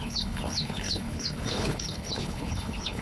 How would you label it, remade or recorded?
remade